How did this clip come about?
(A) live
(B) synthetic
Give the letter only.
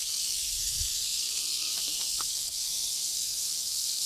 B